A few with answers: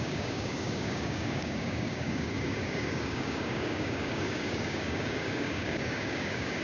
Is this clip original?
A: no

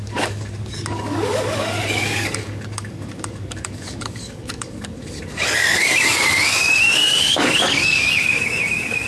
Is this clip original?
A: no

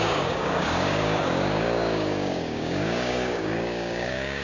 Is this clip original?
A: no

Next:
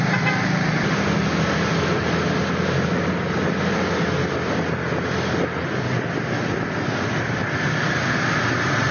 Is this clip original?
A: yes